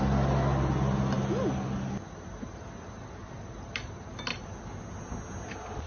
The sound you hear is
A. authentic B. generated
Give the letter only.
A